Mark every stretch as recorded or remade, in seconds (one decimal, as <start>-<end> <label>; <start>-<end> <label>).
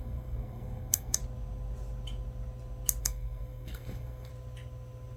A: 0.0-1.2 remade; 1.2-3.0 recorded; 3.0-4.3 remade; 4.3-5.2 recorded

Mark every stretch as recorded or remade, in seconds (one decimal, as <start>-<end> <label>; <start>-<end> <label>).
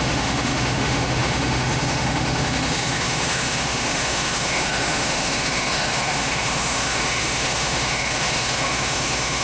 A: 0.0-9.4 remade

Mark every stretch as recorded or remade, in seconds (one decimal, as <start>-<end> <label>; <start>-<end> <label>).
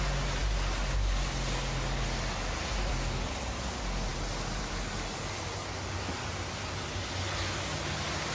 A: 0.0-8.3 recorded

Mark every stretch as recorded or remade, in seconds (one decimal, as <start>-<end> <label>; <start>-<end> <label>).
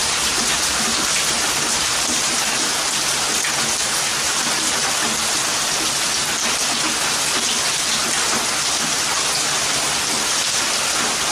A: 0.0-2.7 remade; 2.7-11.3 recorded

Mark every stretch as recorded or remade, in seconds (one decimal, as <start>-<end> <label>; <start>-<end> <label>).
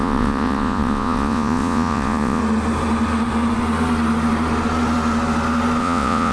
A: 0.0-2.4 remade; 2.4-5.8 recorded; 5.8-6.3 remade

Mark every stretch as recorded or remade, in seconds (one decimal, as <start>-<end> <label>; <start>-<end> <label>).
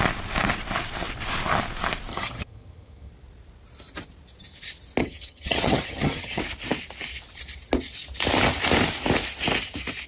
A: 0.0-2.1 recorded; 2.1-3.1 remade; 3.1-5.0 recorded; 5.0-6.4 remade; 6.4-10.1 recorded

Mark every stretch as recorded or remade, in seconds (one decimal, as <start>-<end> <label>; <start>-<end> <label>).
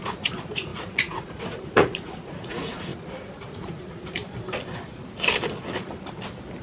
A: 0.0-2.9 remade; 2.9-3.5 recorded; 3.5-4.2 remade; 4.2-6.6 recorded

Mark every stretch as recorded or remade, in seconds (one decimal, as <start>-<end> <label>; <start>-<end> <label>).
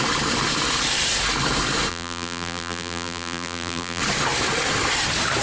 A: 0.0-1.9 recorded; 1.9-4.0 remade; 4.0-5.4 recorded